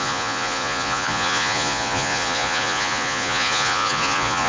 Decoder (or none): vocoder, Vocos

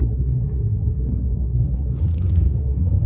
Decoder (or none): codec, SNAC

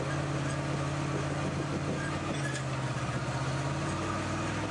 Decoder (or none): none